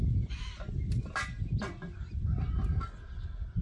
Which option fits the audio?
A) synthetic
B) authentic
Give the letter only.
B